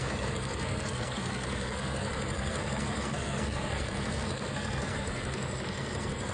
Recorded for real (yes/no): no